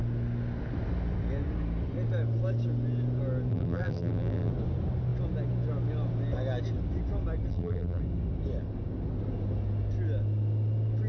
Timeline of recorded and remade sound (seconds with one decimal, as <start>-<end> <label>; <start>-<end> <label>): 0.0-3.5 recorded; 3.5-4.5 remade; 4.5-7.5 recorded; 7.5-8.0 remade; 8.0-11.1 recorded